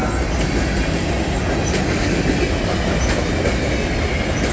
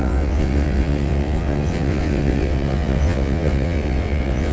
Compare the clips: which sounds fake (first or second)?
second